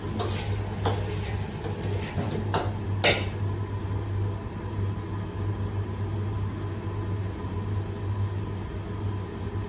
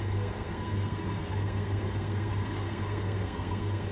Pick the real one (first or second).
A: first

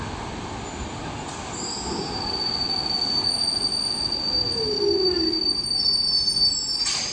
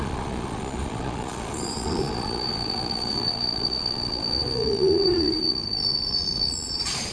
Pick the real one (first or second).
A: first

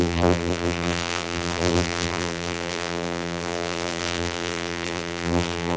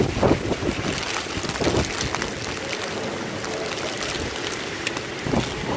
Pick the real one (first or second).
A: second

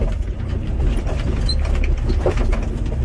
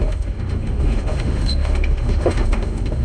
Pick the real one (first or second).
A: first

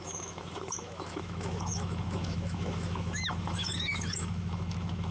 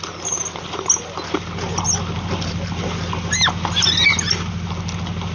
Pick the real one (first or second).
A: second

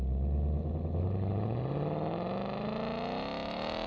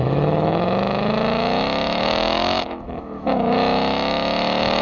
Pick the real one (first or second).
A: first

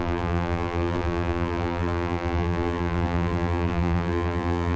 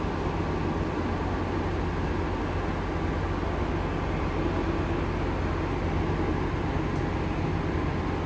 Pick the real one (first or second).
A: second